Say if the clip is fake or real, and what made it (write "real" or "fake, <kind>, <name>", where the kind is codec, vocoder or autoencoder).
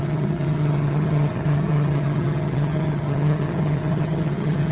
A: fake, vocoder, HiFi-GAN